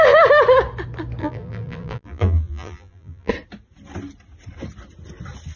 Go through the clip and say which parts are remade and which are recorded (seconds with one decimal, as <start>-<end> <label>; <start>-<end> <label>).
0.0-1.2 recorded; 1.2-3.3 remade; 3.3-5.6 recorded